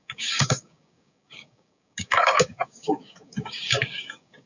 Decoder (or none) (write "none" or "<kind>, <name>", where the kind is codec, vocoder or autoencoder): codec, DAC